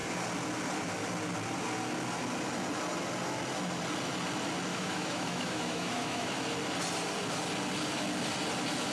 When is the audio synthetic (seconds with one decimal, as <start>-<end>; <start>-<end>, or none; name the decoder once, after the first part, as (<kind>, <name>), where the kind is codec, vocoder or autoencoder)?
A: 4.7-6.3 (autoencoder, DAC-VAE)